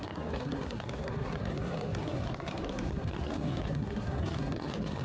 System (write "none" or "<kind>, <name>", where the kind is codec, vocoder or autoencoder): codec, SNAC